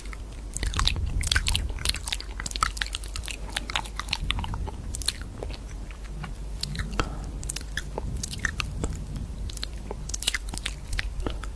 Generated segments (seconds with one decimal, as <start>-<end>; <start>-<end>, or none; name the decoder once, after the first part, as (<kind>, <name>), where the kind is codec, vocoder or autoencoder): 0.0-2.0 (vocoder, BigVGAN v2); 4.2-11.6

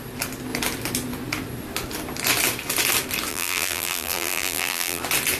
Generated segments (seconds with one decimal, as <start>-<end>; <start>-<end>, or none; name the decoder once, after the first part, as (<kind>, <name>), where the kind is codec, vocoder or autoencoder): 3.3-5.0 (vocoder, BigVGAN v2)

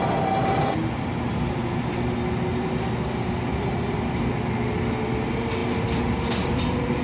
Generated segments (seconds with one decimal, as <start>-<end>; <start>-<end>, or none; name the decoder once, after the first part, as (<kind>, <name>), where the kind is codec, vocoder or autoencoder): 3.5-4.2 (vocoder, BigVGAN v2); 5.6-6.6

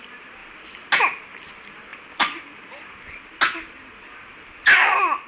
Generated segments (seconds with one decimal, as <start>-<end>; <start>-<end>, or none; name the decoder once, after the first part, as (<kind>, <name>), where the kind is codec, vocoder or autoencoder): none

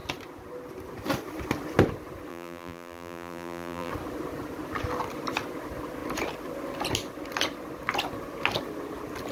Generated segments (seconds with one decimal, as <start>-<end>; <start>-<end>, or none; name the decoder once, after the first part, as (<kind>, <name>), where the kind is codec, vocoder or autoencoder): 2.3-3.9 (vocoder, BigVGAN v2)

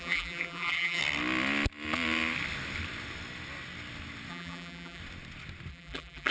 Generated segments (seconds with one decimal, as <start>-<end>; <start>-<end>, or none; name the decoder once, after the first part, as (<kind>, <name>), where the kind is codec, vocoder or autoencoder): 0.0-1.0 (vocoder, BigVGAN v2); 4.3-5.0; 5.7-6.3

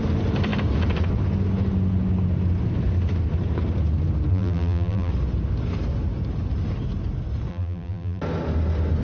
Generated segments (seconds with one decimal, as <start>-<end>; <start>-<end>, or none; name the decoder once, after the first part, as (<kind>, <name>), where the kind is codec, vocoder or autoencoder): 4.3-5.1 (vocoder, BigVGAN v2); 7.5-8.2